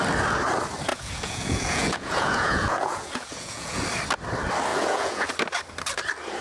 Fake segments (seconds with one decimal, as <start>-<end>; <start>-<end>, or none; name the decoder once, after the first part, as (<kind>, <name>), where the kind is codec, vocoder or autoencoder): 0.9-3.8 (vocoder, Vocos); 4.7-5.3